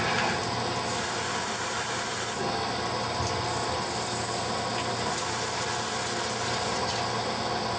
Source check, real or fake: real